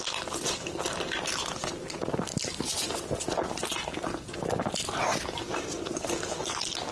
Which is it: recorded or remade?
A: recorded